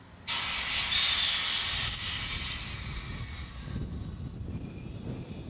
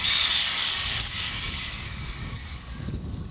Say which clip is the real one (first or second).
first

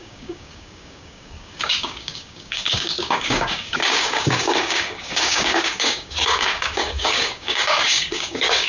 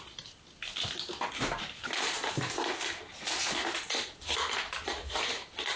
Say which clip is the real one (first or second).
second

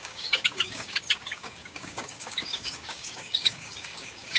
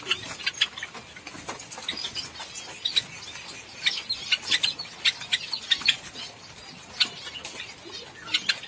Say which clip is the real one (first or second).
second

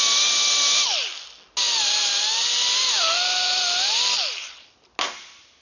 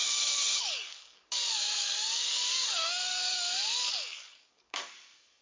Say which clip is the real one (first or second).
first